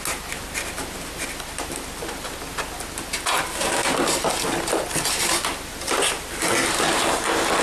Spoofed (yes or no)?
no